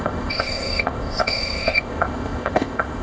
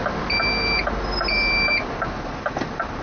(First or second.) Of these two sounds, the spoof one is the first